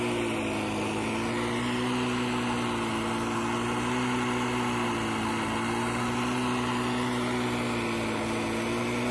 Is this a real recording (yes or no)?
yes